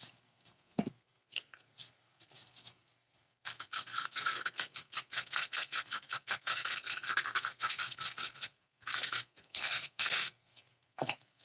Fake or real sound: fake